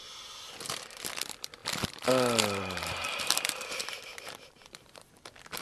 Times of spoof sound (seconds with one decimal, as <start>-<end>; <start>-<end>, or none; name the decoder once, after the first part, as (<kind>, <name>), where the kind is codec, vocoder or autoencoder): 1.6-5.0 (vocoder, BigVGAN v2)